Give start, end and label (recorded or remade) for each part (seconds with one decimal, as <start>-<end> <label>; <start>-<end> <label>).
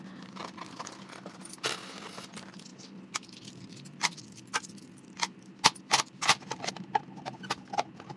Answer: 0.0-8.2 recorded